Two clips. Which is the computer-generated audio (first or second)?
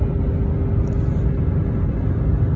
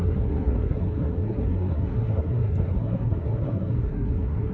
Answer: second